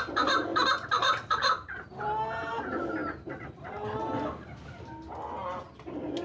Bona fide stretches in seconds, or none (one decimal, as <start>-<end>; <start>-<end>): 0.0-0.5; 2.0-3.0; 3.7-6.2